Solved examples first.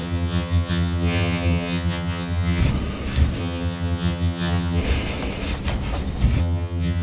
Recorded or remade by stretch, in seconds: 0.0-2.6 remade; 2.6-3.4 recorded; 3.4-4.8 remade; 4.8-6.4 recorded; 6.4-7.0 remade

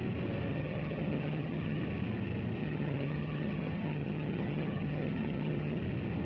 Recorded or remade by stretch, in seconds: 0.0-0.5 recorded; 0.5-1.8 remade; 1.8-2.6 recorded; 2.6-5.8 remade; 5.8-6.2 recorded

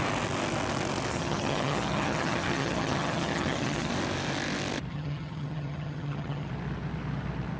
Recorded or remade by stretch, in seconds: 0.0-1.1 recorded; 1.1-3.9 remade; 3.9-4.9 recorded; 4.9-6.5 remade; 6.5-7.6 recorded

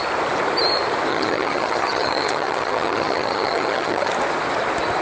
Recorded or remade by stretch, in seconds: 0.0-1.1 recorded; 1.1-4.1 remade; 4.1-5.0 recorded

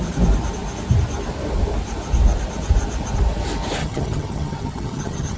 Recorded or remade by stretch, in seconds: 0.0-3.8 recorded; 3.8-5.4 remade

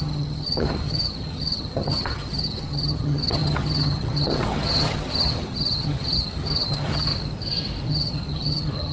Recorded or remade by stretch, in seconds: 0.0-7.1 remade; 7.1-7.9 recorded; 7.9-8.9 remade